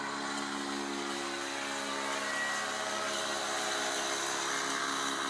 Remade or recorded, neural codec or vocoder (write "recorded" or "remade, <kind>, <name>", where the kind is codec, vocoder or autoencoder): recorded